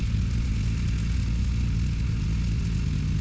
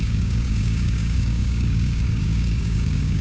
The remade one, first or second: second